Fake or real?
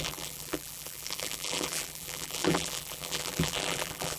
fake